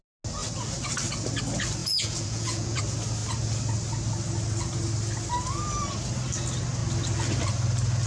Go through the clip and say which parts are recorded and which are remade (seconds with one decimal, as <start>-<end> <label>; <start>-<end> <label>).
0.0-1.8 recorded; 1.8-2.8 remade; 2.8-8.1 recorded